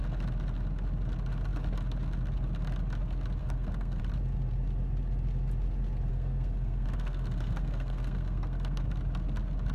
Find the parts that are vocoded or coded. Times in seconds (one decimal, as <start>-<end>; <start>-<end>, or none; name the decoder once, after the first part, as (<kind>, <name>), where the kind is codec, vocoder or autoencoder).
3.4-4.0 (codec, SNAC); 6.1-8.9